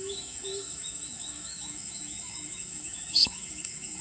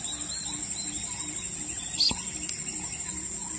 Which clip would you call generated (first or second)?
first